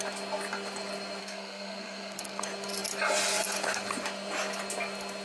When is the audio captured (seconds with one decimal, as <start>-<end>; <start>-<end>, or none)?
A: 0.0-1.2; 2.4-5.2